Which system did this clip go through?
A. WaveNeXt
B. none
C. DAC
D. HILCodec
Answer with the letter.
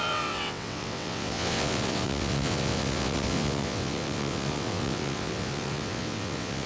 A